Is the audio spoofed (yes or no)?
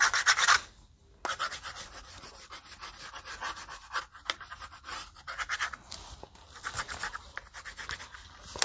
no